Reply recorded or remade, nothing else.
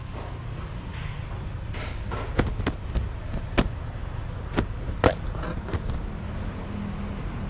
recorded